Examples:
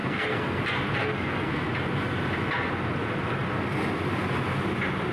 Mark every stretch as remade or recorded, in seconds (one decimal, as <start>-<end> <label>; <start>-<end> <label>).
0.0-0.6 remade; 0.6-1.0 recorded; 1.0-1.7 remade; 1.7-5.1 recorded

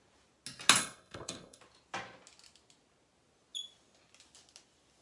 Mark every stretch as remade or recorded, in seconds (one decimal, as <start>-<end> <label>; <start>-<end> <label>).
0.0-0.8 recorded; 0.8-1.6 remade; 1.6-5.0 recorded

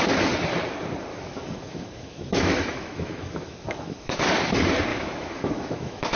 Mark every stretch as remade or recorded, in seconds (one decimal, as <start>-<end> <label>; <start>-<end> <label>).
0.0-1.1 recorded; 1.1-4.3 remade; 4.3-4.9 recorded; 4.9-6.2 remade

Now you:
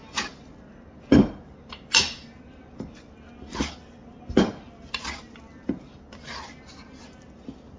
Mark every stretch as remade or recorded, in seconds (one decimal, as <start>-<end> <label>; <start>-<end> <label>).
0.0-7.8 recorded